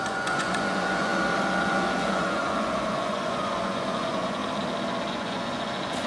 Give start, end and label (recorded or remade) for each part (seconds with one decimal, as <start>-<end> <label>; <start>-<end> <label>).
0.0-1.1 remade; 1.1-1.6 recorded; 1.6-4.4 remade; 4.4-5.1 recorded; 5.1-6.1 remade